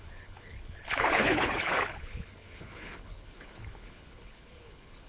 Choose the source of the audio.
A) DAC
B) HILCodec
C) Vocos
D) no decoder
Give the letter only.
B